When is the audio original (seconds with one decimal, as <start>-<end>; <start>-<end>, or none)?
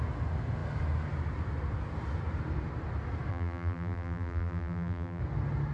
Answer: 0.0-3.3; 5.2-5.7